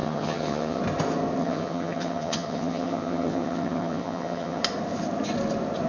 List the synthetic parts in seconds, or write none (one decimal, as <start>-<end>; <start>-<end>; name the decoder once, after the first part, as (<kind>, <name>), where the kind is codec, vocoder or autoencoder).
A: 0.0-0.8 (vocoder, HiFi-GAN); 1.4-4.6